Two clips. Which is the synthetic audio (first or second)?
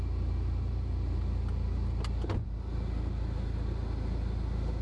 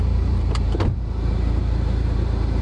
second